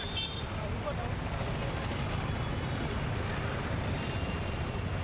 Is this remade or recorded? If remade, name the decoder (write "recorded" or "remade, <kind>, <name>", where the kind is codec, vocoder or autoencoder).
recorded